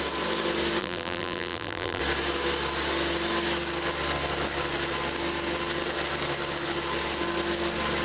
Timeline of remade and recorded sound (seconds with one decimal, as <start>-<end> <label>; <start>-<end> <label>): 0.0-0.8 recorded; 0.8-2.0 remade; 2.0-8.0 recorded